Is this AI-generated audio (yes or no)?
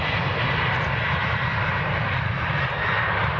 yes